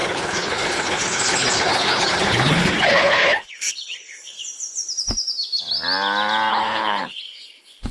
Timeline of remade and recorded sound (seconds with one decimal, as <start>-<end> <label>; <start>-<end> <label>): 0.0-4.4 remade; 4.4-6.5 recorded; 6.5-7.9 remade